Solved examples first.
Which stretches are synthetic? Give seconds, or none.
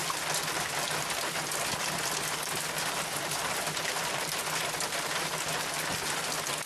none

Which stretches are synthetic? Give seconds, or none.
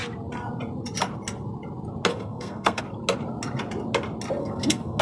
2.1-2.8 (codec, SNAC); 4.4-5.0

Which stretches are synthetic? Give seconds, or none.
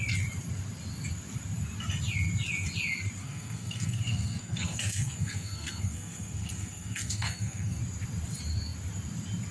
3.2-7.8 (codec, SNAC)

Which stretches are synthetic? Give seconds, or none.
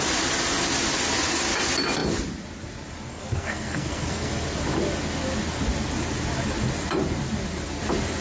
3.1-4.3 (codec, SNAC)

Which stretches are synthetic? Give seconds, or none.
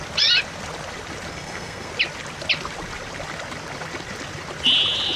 1.3-1.9 (codec, SNAC)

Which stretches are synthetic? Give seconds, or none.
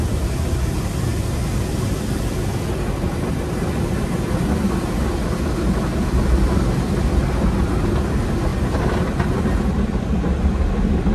none